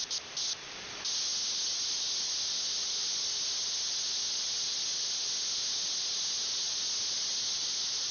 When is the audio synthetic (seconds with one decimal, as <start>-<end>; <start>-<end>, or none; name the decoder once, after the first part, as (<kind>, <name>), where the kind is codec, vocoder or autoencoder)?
none